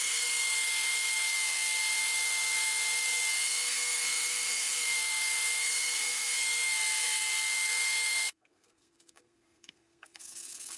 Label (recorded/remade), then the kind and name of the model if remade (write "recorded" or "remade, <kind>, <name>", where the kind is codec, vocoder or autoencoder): remade, codec, SNAC